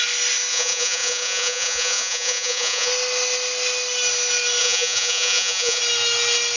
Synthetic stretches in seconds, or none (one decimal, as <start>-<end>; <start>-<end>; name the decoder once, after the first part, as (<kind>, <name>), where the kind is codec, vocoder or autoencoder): 0.5-2.9 (vocoder, Vocos); 4.6-5.8

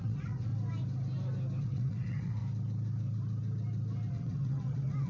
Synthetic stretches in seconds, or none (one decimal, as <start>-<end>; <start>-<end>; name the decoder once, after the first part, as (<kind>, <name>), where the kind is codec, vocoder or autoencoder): 0.0-0.5 (vocoder, WaveNeXt); 1.6-2.4; 4.1-5.1

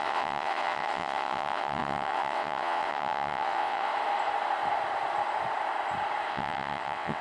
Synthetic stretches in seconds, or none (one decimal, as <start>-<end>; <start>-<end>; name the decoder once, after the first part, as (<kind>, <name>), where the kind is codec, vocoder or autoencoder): 0.0-3.9 (vocoder, WaveNeXt); 6.3-7.2

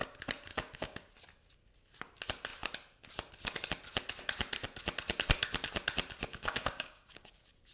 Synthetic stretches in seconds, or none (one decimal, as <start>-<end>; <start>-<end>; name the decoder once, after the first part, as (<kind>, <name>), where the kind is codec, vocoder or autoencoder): 0.5-1.1 (codec, DAC); 6.3-7.3

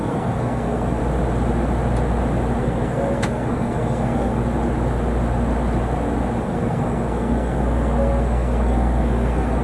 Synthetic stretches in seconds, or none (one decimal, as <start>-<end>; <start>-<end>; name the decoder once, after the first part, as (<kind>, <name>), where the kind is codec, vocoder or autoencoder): 0.0-1.0 (codec, SNAC); 2.6-4.4; 6.4-9.6

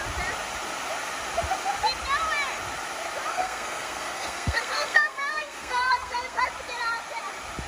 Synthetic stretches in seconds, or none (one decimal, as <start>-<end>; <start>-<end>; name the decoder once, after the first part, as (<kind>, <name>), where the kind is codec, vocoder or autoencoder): 3.3-6.4 (codec, SNAC)

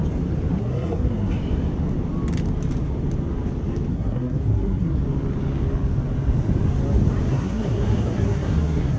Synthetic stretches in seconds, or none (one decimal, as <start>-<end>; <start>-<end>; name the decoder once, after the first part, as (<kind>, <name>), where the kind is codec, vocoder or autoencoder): 0.6-1.4 (codec, SNAC); 3.9-5.0; 7.3-9.0